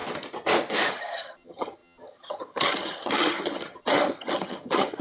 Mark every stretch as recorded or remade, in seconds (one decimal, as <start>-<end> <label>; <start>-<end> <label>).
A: 0.0-0.9 recorded; 0.9-5.0 remade